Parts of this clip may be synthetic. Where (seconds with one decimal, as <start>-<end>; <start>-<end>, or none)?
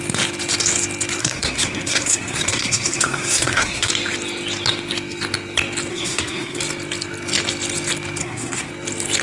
1.2-3.9; 5.9-6.6; 8.2-8.7